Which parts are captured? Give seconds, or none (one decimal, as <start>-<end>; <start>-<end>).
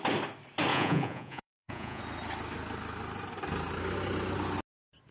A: 0.0-0.7; 2.0-5.1